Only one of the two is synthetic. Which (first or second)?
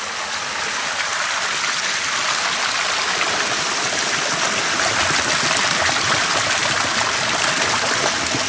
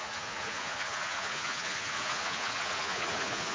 second